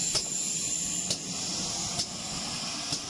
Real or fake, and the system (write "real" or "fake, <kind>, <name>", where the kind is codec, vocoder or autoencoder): real